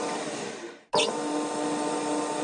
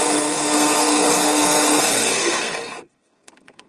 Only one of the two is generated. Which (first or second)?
second